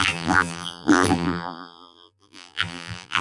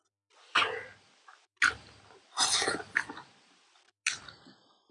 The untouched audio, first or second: second